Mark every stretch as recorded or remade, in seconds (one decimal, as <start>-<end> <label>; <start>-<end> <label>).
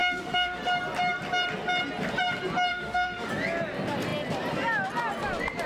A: 0.0-0.6 remade; 0.6-2.7 recorded; 2.7-3.3 remade; 3.3-5.7 recorded